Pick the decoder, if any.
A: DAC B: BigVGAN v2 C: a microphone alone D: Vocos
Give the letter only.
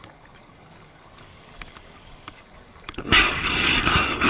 A